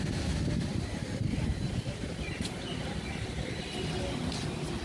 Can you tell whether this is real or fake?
real